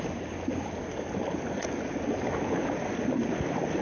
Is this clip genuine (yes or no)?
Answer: yes